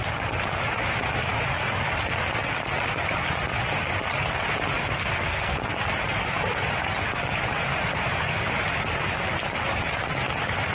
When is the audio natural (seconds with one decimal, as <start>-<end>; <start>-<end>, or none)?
0.0-5.0; 5.6-10.7